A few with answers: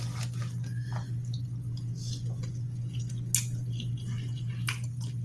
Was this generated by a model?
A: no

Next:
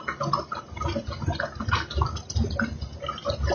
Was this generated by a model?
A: no